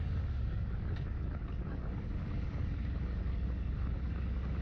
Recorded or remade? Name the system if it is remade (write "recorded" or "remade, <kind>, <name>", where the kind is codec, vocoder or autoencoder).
remade, codec, DAC